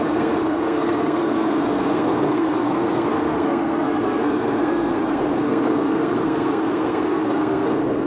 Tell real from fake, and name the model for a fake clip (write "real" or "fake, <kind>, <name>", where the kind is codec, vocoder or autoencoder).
fake, codec, SNAC